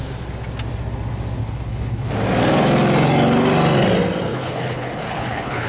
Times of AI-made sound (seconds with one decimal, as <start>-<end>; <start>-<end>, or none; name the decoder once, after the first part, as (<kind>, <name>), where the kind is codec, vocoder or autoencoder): 1.4-2.1 (codec, HILCodec); 4.3-5.7